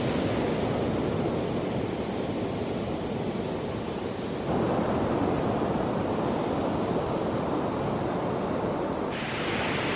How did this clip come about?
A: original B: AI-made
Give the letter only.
A